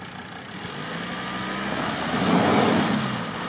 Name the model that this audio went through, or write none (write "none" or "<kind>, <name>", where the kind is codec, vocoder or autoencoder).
none